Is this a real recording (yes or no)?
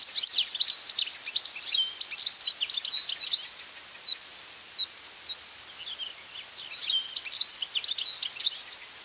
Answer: yes